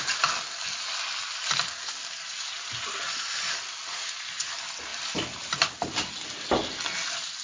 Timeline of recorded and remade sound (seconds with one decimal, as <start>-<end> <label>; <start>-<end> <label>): 0.0-4.9 recorded; 4.9-6.1 remade; 6.1-7.4 recorded